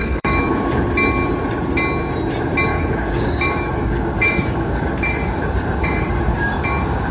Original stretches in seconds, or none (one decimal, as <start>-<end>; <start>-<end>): 0.7-2.7